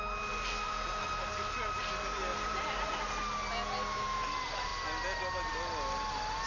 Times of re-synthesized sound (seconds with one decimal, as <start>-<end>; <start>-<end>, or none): 2.3-3.0